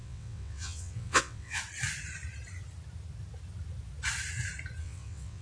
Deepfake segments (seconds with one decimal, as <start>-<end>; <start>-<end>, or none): 0.0-1.6; 4.8-5.4

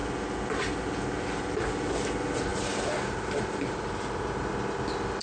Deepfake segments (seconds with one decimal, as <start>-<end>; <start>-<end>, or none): none